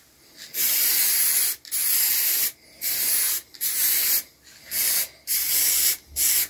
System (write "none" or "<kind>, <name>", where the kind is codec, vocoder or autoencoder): none